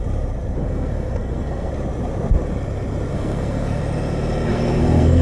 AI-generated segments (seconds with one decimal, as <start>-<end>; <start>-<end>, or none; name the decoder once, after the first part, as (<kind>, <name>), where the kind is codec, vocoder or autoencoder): 0.6-1.7 (codec, SNAC); 3.1-3.8; 4.5-5.2